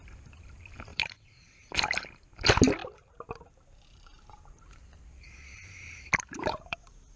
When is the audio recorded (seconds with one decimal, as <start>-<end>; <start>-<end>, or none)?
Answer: 0.0-0.9; 1.7-2.8